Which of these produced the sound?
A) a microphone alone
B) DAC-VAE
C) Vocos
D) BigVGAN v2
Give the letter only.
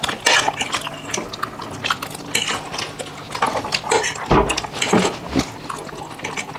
A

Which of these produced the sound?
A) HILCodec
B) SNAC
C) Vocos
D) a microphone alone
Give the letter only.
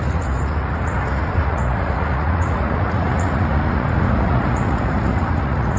C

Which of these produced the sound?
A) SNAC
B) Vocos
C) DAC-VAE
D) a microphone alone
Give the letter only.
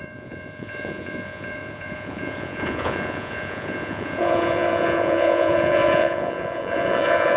B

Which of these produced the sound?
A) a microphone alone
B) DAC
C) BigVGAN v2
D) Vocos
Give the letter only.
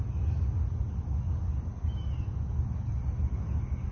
A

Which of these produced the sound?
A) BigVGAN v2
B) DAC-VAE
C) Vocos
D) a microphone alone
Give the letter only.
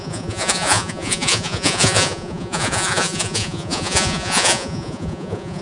C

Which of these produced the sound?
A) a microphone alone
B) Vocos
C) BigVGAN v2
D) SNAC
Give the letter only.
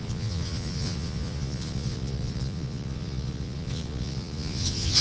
B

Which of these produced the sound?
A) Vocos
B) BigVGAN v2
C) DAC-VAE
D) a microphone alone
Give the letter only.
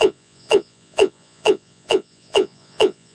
A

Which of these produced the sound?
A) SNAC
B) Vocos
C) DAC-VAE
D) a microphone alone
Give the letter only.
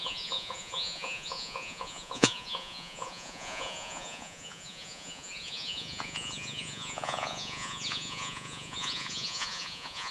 B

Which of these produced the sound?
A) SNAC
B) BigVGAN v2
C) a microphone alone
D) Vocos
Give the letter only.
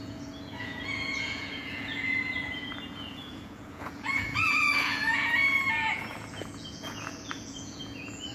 D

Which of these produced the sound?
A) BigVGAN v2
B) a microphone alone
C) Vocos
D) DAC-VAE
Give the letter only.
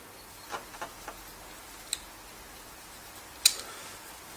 B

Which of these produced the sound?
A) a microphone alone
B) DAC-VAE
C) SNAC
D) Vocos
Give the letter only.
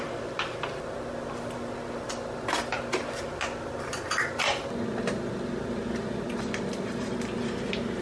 A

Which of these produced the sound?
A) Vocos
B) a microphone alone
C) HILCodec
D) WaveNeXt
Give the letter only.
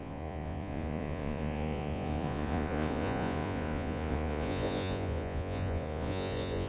A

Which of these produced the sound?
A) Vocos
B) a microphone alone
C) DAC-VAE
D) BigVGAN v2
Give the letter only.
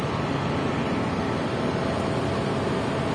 B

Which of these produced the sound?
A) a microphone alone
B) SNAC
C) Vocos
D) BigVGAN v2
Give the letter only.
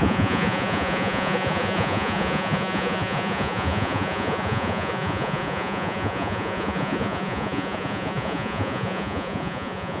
C